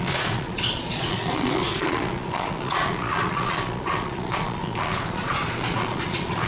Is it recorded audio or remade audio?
remade